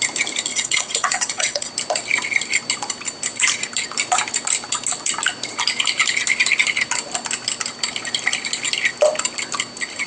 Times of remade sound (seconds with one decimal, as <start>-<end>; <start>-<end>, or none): 0.5-1.7